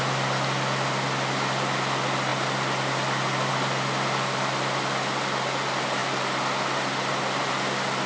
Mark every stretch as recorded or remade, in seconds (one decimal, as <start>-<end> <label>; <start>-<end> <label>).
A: 0.0-8.1 recorded